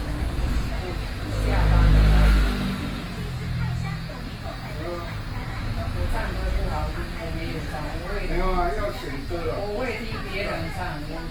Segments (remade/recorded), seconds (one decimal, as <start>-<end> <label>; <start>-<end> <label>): 0.0-11.3 recorded